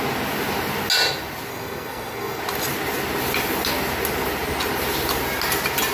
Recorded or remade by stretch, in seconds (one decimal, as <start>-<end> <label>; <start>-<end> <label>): 0.0-1.5 recorded; 1.5-2.4 remade; 2.4-5.9 recorded